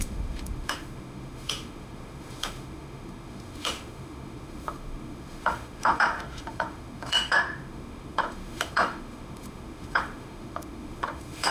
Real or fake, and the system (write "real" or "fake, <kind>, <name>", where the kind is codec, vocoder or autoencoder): fake, autoencoder, DAC-VAE